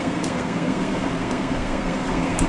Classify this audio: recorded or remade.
remade